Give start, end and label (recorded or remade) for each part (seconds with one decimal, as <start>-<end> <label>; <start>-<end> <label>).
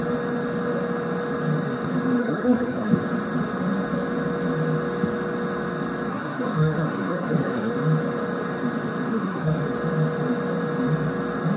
0.0-2.2 recorded; 2.2-2.9 remade; 2.9-6.1 recorded; 6.1-7.7 remade; 7.7-9.1 recorded; 9.1-9.6 remade; 9.6-11.6 recorded